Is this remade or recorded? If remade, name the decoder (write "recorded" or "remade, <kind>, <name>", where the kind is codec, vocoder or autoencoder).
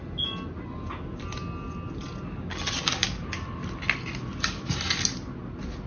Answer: recorded